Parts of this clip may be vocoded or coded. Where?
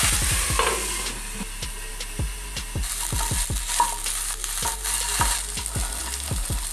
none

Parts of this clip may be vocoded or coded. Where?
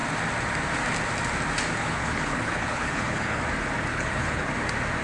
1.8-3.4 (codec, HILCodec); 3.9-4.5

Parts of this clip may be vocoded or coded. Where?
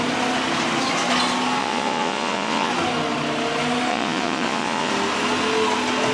1.6-2.7 (vocoder, Vocos); 3.9-4.9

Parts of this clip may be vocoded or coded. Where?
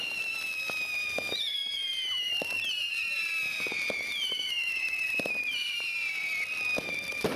0.0-1.6 (vocoder, BigVGAN v2); 2.3-7.4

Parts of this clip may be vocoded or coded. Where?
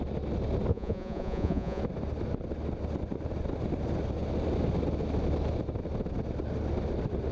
0.7-1.8 (vocoder, Vocos)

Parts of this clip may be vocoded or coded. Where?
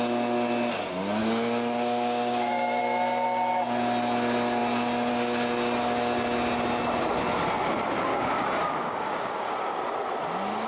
1.2-2.8 (codec, DAC); 8.1-9.5